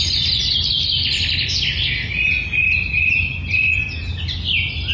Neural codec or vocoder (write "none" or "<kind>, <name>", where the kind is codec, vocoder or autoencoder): none